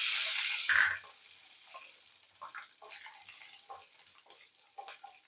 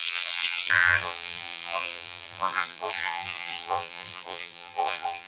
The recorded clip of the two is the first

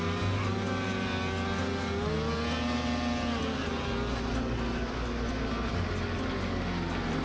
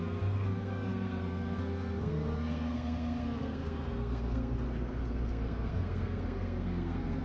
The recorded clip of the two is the first